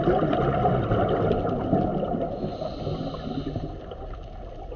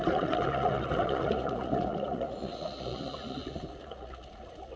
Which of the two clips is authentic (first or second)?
first